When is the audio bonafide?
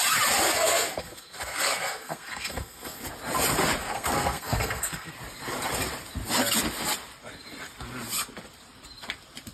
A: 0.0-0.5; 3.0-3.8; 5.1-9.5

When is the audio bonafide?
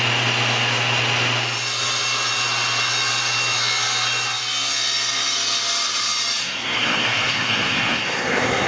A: 0.0-6.4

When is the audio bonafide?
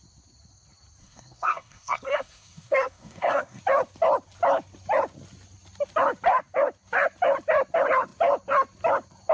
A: 0.0-1.0; 3.6-9.3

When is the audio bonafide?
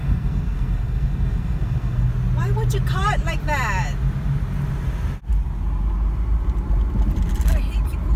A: 2.1-8.2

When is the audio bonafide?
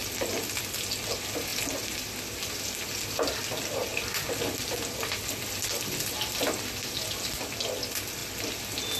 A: 0.0-9.0